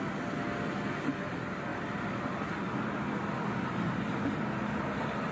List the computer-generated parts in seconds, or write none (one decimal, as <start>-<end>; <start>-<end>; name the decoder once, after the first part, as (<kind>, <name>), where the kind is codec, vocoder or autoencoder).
1.7-4.1 (vocoder, BigVGAN v2)